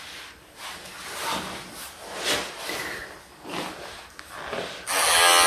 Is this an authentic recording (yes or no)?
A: yes